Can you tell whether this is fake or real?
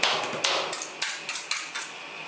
real